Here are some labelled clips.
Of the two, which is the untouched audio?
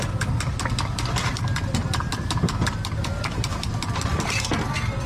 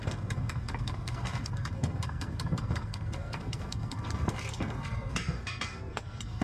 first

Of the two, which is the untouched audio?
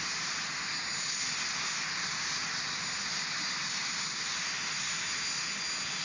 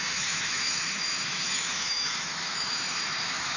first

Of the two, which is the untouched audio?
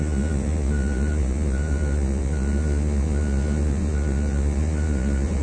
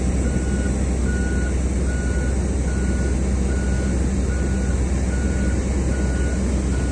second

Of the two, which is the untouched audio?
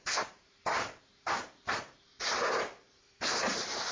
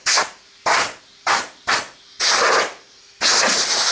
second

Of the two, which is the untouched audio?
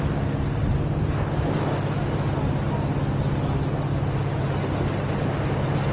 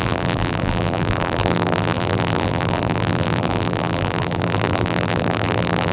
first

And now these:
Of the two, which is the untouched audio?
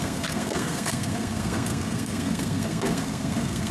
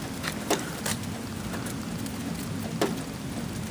second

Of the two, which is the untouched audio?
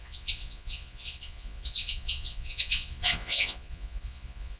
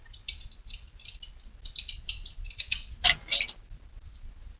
second